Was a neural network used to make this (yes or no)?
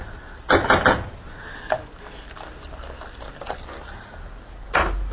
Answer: no